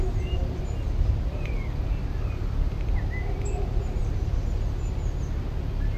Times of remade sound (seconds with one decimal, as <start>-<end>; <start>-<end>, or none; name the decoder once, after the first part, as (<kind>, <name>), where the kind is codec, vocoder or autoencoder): none